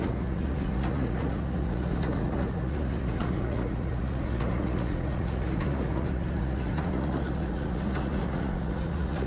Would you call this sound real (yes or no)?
no